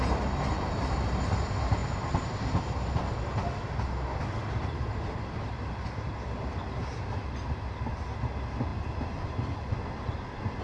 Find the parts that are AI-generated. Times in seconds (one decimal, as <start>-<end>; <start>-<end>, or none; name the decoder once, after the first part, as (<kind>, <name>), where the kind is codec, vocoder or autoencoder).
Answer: none